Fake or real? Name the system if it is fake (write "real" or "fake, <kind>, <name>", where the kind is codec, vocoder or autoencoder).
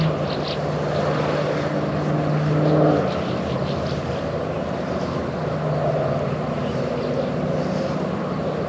real